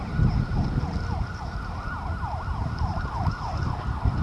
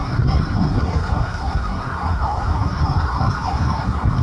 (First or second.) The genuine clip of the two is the first